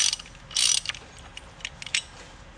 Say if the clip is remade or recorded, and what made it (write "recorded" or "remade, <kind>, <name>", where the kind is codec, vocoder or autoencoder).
recorded